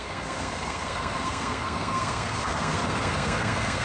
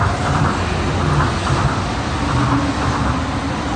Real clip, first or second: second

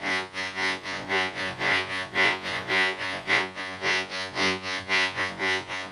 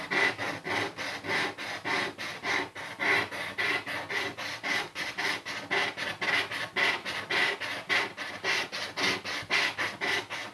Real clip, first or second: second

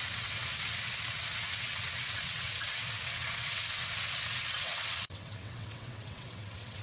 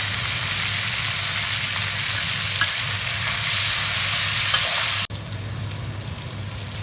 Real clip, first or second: second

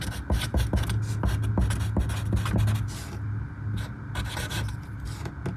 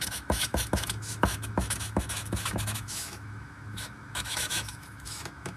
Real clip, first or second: first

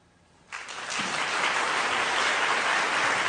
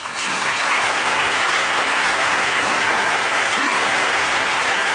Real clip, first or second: first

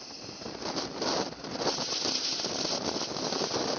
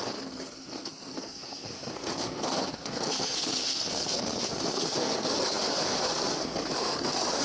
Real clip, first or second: first